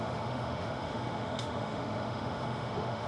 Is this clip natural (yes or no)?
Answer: no